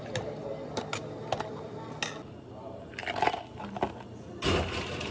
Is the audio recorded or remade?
recorded